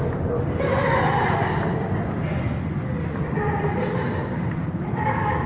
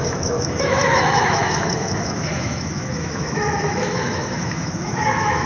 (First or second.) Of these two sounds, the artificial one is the second